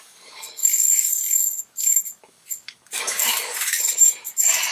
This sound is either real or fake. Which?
fake